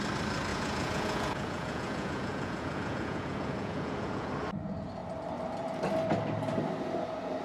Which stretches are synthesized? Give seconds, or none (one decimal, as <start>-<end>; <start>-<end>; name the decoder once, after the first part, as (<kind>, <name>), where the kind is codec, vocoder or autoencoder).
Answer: 0.5-4.3 (vocoder, Vocos)